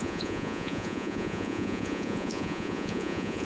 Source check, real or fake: fake